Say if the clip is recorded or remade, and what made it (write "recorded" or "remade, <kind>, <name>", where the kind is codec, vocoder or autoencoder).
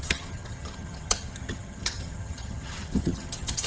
remade, vocoder, HiFi-GAN